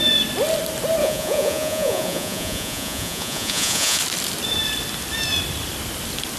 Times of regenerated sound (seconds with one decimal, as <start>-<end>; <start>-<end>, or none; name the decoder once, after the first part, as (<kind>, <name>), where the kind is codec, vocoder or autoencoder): 1.0-4.0 (vocoder, Vocos)